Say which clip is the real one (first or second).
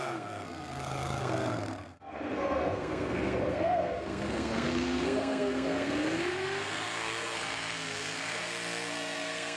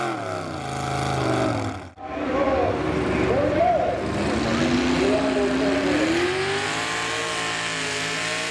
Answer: second